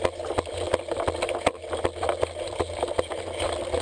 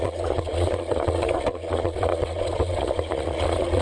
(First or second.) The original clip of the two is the first